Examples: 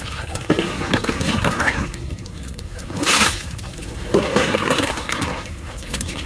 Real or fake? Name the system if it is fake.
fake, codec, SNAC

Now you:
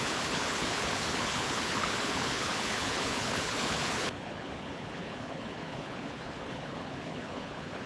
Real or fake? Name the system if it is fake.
fake, codec, HILCodec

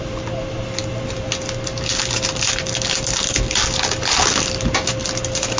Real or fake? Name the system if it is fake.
real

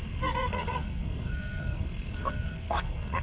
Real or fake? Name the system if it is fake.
fake, codec, SNAC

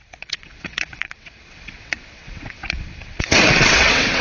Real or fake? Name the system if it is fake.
fake, vocoder, WaveNeXt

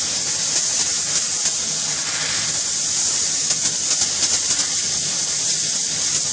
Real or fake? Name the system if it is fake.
real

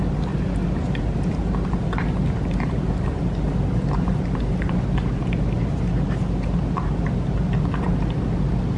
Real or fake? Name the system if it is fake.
real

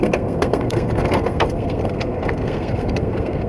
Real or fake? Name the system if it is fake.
fake, codec, SNAC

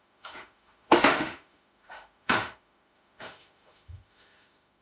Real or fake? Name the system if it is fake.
fake, autoencoder, DAC-VAE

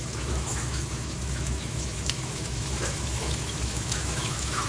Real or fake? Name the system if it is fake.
fake, autoencoder, DAC-VAE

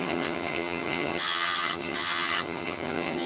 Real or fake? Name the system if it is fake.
fake, vocoder, HiFi-GAN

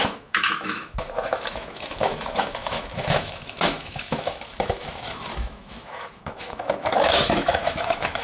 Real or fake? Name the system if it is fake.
fake, autoencoder, DAC-VAE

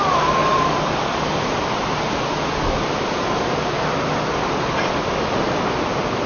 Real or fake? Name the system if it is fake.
real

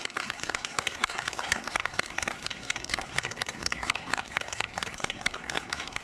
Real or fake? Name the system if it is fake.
fake, codec, SNAC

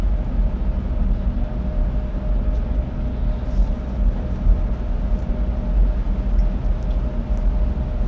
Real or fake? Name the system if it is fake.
real